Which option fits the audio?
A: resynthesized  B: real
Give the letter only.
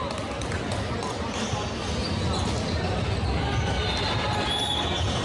B